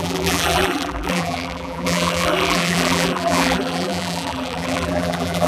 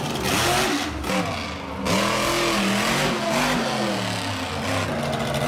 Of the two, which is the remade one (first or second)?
first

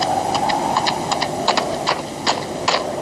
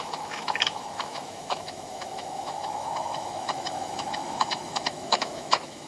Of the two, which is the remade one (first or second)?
second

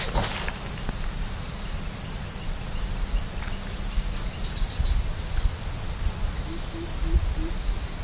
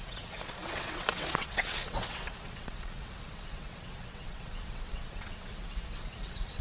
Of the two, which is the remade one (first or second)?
second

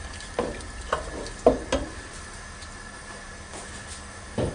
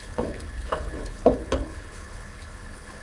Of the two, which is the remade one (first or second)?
second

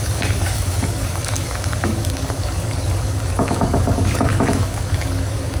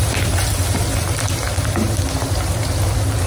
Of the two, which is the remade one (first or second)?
first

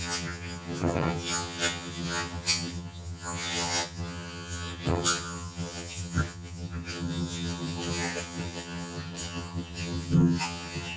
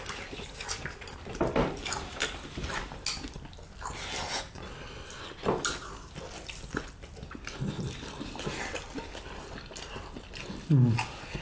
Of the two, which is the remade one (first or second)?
first